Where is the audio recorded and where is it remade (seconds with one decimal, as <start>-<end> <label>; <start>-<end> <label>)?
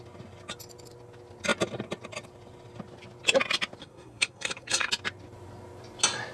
0.0-3.8 recorded; 3.8-4.9 remade; 4.9-6.3 recorded